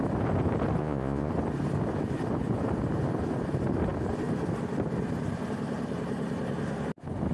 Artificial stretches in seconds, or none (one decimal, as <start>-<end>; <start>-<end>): 0.8-1.3